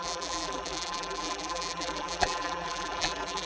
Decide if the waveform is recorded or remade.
remade